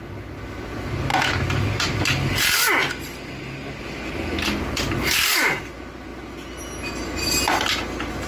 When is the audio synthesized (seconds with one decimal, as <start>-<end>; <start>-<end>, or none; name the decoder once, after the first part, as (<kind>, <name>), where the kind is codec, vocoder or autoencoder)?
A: none